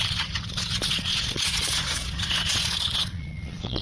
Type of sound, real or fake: fake